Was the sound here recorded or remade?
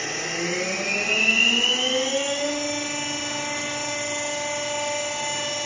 recorded